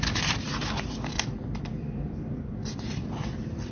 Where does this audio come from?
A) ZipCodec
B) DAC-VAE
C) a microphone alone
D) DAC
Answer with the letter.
C